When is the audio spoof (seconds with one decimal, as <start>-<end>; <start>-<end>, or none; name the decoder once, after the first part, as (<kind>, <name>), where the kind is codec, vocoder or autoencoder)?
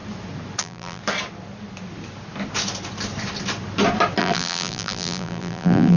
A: 0.6-1.0 (vocoder, BigVGAN v2); 4.2-6.0